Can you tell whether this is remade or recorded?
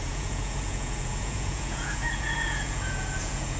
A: remade